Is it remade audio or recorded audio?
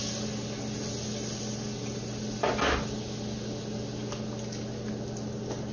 recorded